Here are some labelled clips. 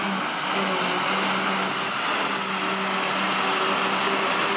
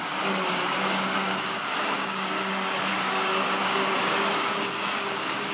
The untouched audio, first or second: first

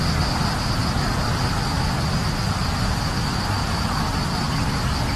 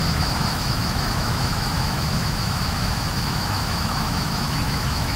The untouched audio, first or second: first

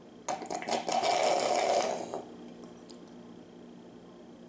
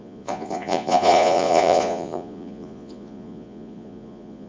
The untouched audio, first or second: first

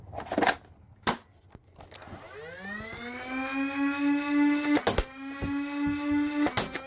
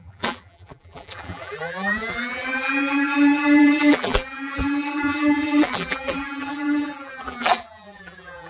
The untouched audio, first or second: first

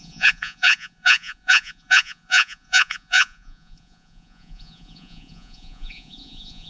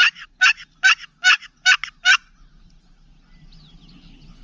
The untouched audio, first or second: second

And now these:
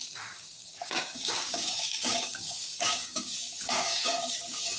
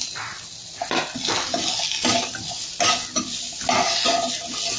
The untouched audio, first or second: second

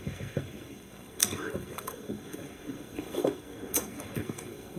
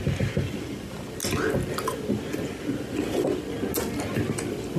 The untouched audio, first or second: second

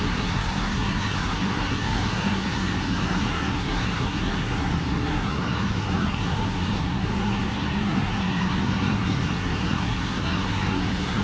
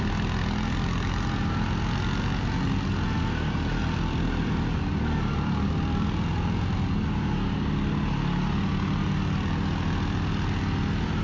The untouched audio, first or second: second